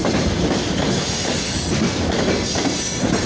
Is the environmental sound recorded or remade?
recorded